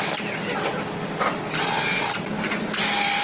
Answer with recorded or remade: recorded